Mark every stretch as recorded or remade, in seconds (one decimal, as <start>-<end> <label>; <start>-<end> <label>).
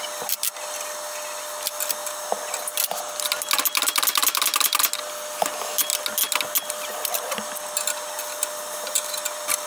0.0-9.7 recorded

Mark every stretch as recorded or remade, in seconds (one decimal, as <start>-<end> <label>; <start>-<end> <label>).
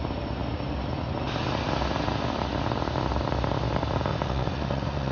0.0-4.1 recorded; 4.1-5.1 remade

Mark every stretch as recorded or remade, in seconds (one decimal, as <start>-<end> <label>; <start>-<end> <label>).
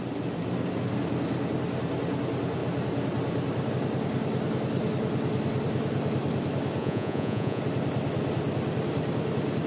0.0-6.8 recorded; 6.8-7.6 remade; 7.6-9.7 recorded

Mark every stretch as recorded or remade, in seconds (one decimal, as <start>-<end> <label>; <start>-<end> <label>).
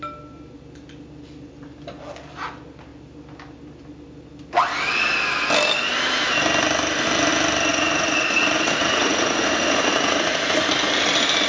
0.0-7.7 recorded; 7.7-10.7 remade; 10.7-11.5 recorded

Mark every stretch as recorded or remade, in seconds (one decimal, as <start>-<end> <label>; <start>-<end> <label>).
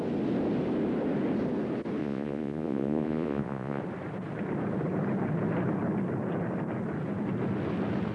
0.0-2.0 recorded; 2.0-3.8 remade; 3.8-8.1 recorded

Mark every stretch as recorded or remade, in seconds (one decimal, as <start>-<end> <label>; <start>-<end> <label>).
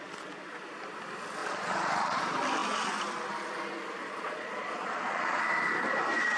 0.0-1.4 recorded; 1.4-2.2 remade; 2.2-4.0 recorded; 4.0-5.4 remade; 5.4-6.4 recorded